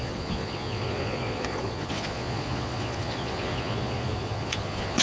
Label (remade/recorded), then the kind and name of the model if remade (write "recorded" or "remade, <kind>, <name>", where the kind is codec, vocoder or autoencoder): remade, vocoder, Vocos